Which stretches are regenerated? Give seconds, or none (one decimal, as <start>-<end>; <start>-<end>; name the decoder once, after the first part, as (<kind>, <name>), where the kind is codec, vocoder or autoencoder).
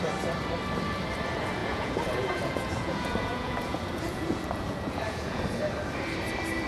1.6-5.6 (vocoder, Vocos)